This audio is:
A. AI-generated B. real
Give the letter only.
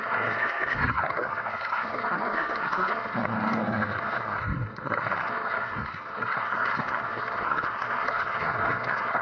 A